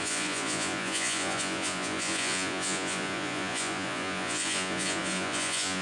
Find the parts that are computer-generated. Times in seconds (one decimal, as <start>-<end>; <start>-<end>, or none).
0.0-5.8